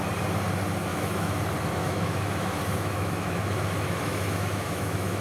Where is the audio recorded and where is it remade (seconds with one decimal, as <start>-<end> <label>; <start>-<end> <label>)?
0.0-0.9 recorded; 0.9-1.4 remade; 1.4-1.8 recorded; 1.8-5.2 remade